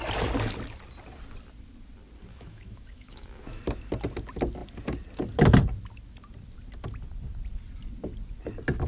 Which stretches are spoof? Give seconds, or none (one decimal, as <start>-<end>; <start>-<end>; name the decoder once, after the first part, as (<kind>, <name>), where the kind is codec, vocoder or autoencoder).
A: 2.3-3.6 (autoencoder, DAC-VAE)